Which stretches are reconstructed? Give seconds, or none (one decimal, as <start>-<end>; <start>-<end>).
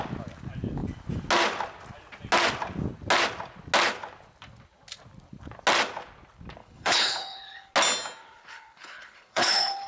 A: 6.6-7.7; 8.2-9.9